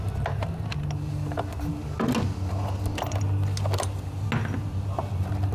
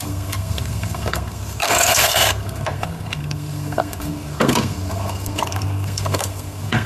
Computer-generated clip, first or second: second